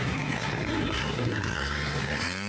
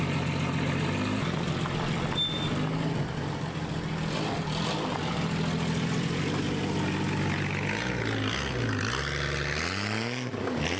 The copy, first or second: first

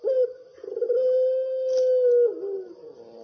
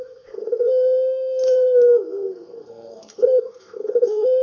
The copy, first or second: second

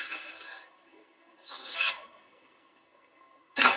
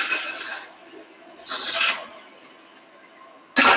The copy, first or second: first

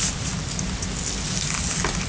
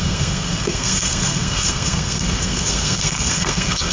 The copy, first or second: second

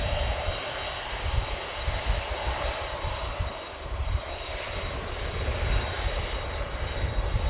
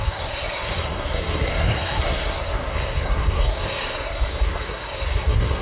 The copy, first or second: second